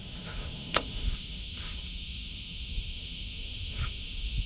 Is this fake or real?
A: fake